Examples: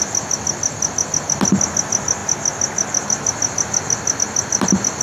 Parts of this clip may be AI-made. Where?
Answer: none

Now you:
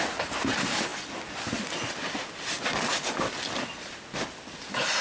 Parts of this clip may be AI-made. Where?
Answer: none

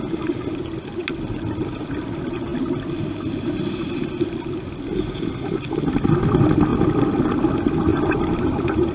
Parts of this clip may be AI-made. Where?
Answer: none